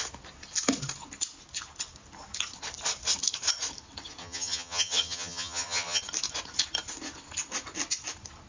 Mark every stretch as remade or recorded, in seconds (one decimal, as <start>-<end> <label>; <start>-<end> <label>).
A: 0.0-4.2 recorded; 4.2-6.0 remade; 6.0-8.5 recorded